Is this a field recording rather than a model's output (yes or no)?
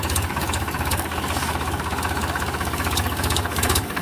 no